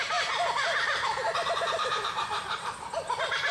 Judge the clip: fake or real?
fake